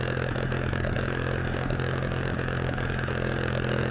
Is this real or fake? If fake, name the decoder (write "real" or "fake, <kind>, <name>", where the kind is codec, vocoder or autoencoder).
fake, codec, DAC